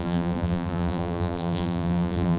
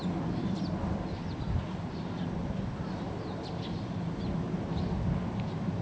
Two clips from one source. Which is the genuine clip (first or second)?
second